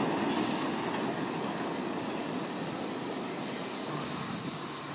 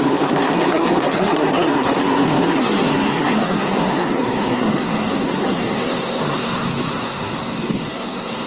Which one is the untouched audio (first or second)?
first